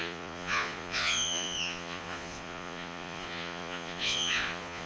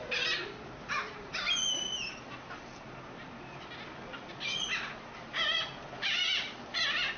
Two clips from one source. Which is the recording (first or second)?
second